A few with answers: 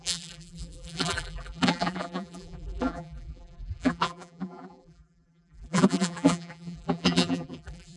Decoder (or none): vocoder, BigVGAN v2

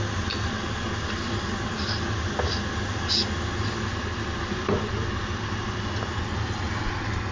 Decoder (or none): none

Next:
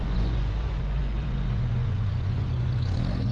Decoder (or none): vocoder, Vocos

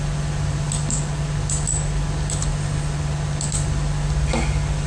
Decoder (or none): vocoder, BigVGAN v2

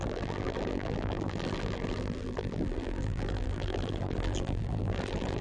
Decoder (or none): vocoder, BigVGAN v2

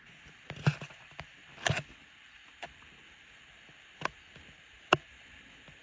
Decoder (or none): none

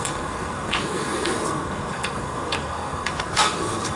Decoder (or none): codec, SNAC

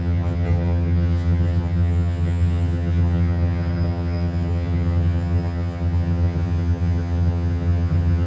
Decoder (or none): vocoder, HiFi-GAN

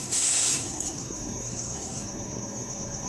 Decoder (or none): codec, SNAC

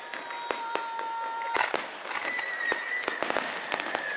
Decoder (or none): none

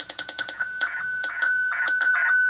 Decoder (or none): vocoder, Vocos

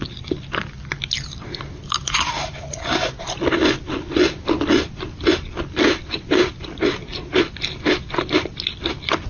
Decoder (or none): none